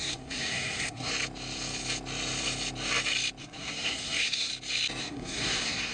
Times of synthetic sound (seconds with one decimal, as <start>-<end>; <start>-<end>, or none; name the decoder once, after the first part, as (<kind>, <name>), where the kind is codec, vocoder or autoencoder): 0.0-1.1 (codec, SNAC); 3.4-4.5; 5.0-5.9

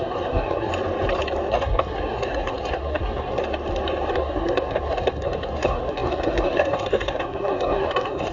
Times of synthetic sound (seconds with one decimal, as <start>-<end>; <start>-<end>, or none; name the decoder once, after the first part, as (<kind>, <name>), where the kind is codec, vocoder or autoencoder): 0.0-0.7 (codec, SNAC); 1.5-3.4; 4.1-8.3

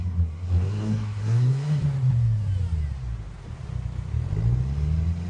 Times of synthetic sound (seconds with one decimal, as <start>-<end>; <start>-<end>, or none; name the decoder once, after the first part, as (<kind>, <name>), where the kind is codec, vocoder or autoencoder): 0.0-1.8 (codec, SNAC)

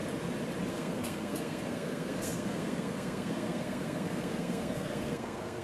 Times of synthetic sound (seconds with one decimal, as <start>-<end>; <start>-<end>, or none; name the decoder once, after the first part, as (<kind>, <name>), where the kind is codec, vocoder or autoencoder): 0.7-5.6 (codec, SNAC)

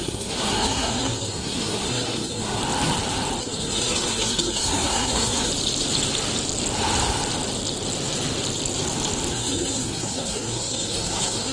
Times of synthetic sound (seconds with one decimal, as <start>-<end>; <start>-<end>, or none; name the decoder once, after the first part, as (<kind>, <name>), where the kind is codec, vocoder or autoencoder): 0.0-2.6 (codec, SNAC); 3.4-5.5; 9.3-11.5

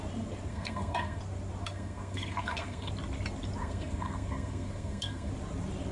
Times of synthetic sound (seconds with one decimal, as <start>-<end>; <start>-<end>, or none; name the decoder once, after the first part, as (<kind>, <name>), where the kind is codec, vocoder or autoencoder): 0.5-1.2 (codec, SNAC); 1.6-2.9; 3.6-5.3